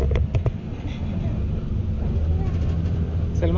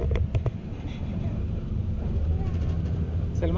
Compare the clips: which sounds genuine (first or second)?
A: first